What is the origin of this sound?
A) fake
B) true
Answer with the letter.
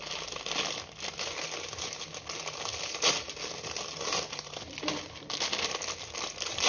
B